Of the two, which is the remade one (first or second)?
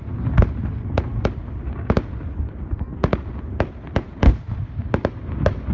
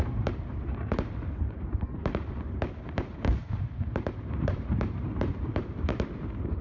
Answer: second